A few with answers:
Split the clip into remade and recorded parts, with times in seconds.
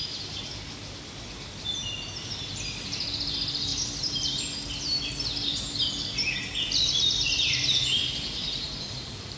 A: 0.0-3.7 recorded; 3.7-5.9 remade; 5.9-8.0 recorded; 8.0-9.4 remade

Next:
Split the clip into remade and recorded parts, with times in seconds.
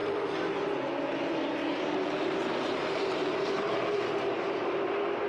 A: 0.0-1.6 recorded; 1.6-4.1 remade; 4.1-5.3 recorded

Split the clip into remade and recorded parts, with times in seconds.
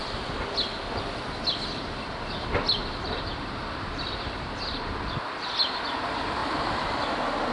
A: 0.0-2.8 recorded; 2.8-4.9 remade; 4.9-6.4 recorded; 6.4-7.1 remade; 7.1-7.5 recorded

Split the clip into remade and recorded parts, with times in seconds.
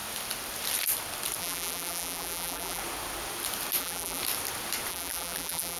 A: 0.0-1.4 recorded; 1.4-2.8 remade; 2.8-3.8 recorded; 3.8-4.2 remade; 4.2-4.9 recorded; 4.9-5.8 remade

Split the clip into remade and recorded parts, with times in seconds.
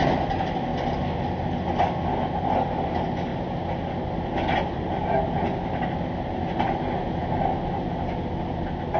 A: 0.0-9.0 recorded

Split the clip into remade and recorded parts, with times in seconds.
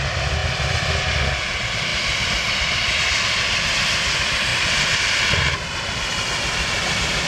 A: 0.0-1.9 recorded; 1.9-3.0 remade; 3.0-7.3 recorded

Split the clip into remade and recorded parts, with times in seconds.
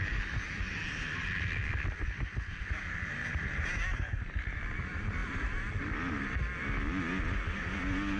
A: 0.0-2.0 recorded; 2.0-4.6 remade; 4.6-5.2 recorded; 5.2-5.8 remade; 5.8-8.2 recorded